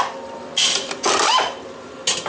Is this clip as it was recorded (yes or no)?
yes